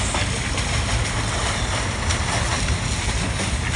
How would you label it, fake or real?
real